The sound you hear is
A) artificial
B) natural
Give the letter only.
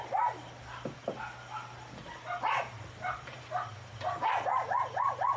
B